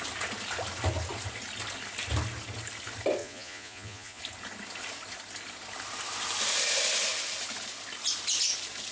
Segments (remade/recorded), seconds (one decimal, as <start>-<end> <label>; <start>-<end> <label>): 0.0-3.2 recorded; 3.2-4.2 remade; 4.2-8.9 recorded